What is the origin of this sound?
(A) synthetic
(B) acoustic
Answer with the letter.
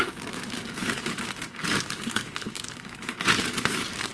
A